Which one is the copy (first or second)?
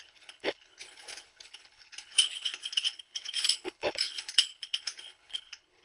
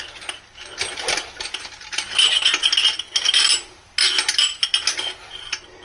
first